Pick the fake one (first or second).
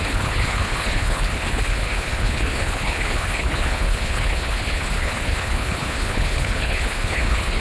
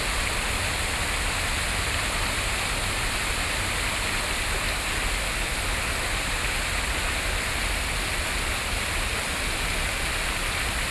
first